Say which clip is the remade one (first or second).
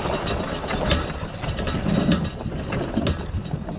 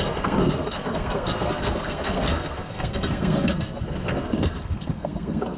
second